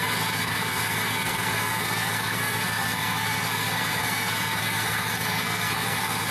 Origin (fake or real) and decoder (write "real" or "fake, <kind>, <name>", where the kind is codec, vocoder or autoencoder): fake, codec, SNAC